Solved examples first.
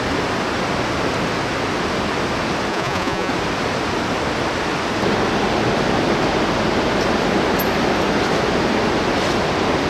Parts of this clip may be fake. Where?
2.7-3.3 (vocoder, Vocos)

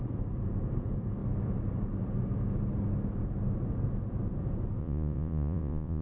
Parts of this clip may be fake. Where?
4.8-6.0 (vocoder, Vocos)